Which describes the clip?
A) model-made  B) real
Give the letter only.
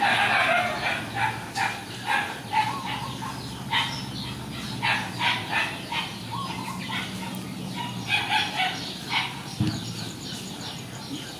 B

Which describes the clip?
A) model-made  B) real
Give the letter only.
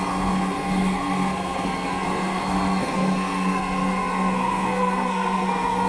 A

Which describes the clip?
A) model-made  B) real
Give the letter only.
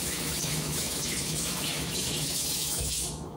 A